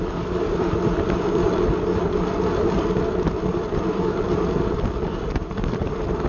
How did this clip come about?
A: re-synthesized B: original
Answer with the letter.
A